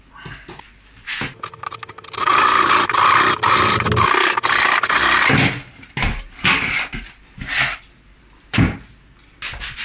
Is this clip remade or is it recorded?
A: recorded